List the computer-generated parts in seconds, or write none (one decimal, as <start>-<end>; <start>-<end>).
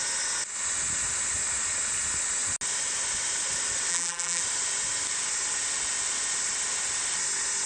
3.9-4.4